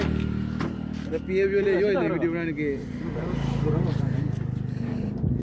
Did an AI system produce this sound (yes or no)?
no